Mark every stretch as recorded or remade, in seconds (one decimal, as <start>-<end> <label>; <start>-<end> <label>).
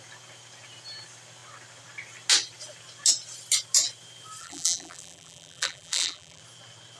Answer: 0.0-4.4 recorded; 4.4-6.4 remade; 6.4-7.0 recorded